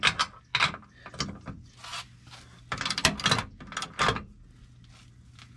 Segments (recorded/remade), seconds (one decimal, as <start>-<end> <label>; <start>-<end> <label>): 0.0-5.6 recorded